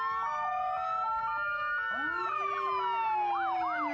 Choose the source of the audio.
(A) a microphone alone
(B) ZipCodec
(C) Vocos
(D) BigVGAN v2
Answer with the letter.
A